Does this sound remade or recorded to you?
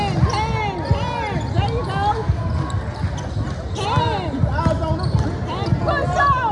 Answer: recorded